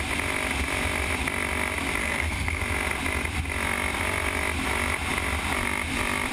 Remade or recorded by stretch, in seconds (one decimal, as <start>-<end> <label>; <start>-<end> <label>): 0.0-2.0 recorded; 2.0-2.6 remade; 2.6-6.3 recorded